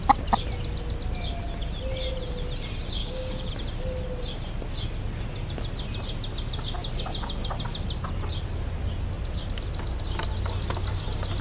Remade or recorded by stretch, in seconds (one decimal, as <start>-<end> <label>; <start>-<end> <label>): 0.0-3.0 recorded; 3.0-3.5 remade; 3.5-11.4 recorded